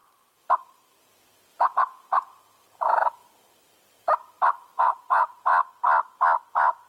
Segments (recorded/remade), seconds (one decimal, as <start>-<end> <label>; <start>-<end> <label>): 0.0-1.0 recorded; 1.0-3.2 remade; 3.2-4.8 recorded; 4.8-5.5 remade; 5.5-6.5 recorded; 6.5-6.9 remade